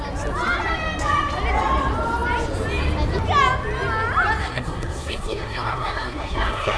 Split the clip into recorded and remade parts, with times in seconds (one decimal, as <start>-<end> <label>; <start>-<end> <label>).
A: 0.0-4.4 recorded; 4.4-6.8 remade